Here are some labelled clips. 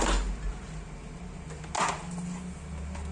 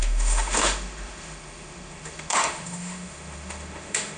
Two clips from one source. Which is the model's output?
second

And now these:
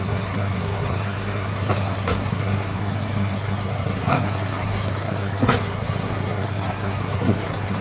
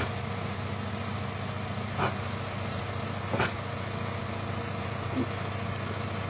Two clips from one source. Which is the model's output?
first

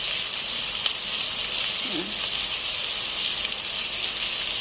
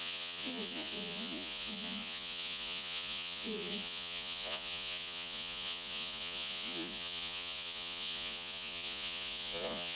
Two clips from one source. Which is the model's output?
second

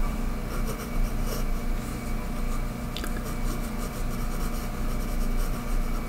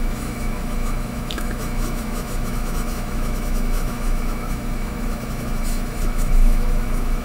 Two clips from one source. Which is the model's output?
second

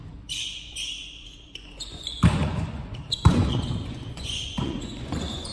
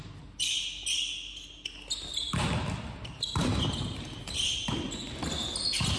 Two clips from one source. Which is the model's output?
first